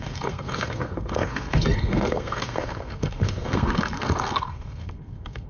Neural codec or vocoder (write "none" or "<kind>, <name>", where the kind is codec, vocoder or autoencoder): codec, SNAC